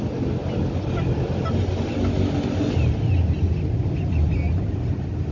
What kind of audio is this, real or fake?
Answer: real